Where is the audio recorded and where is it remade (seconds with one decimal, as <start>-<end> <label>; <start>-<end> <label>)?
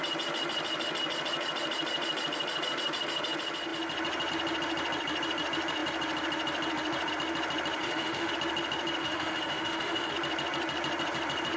0.0-7.8 recorded; 7.8-8.3 remade; 8.3-9.0 recorded; 9.0-10.1 remade; 10.1-11.6 recorded